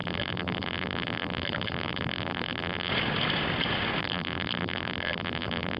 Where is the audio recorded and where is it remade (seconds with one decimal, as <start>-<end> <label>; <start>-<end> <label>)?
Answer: 0.0-2.9 remade; 2.9-4.0 recorded; 4.0-5.8 remade